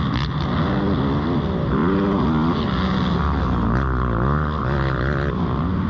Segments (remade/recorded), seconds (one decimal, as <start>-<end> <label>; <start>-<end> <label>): 0.0-5.9 recorded

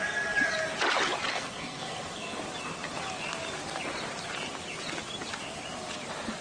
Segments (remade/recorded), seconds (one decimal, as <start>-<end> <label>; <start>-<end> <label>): 0.0-1.3 recorded; 1.3-2.4 remade; 2.4-6.4 recorded

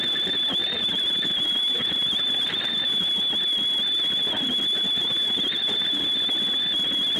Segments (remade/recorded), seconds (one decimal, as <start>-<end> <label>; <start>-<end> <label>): 0.0-0.6 recorded; 0.6-3.0 remade; 3.0-5.0 recorded; 5.0-6.0 remade; 6.0-7.2 recorded

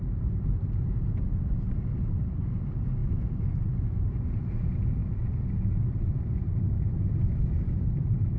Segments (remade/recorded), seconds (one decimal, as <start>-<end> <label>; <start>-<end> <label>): 0.0-8.4 remade

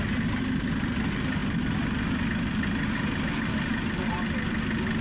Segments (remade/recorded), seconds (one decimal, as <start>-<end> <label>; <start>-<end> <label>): 0.0-5.0 recorded

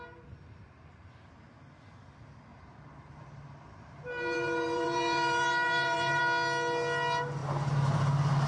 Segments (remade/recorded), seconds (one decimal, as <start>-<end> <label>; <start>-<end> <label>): 0.0-2.5 recorded; 2.5-6.2 remade; 6.2-7.4 recorded; 7.4-8.0 remade; 8.0-8.5 recorded

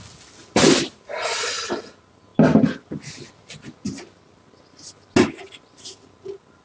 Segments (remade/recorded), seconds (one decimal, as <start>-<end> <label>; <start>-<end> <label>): 0.0-6.6 recorded